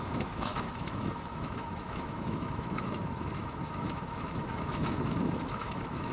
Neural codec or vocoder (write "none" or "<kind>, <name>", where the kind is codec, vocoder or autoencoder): autoencoder, DAC-VAE